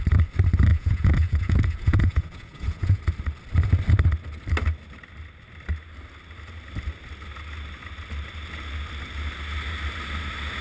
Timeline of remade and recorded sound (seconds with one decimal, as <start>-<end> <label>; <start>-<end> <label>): 0.0-0.7 recorded; 0.7-3.0 remade; 3.0-10.6 recorded